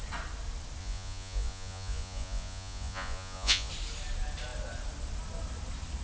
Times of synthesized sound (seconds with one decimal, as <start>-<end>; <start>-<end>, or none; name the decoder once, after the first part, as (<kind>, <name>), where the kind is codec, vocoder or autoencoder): 0.8-3.7 (vocoder, Vocos)